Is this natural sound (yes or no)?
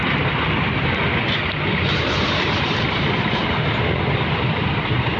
yes